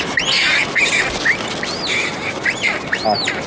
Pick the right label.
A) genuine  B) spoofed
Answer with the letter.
A